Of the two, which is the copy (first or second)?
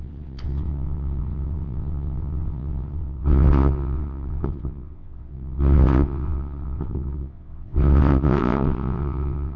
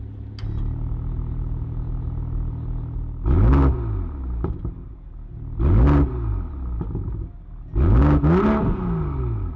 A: first